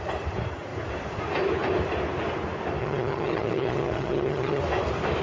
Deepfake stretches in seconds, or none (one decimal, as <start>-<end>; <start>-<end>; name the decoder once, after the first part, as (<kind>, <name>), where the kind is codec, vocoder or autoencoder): 2.8-4.6 (vocoder, HiFi-GAN)